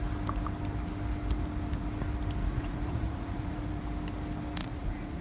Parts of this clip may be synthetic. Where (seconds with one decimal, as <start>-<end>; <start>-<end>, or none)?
2.4-3.7; 4.6-5.2